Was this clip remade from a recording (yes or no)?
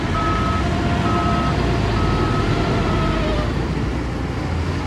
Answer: no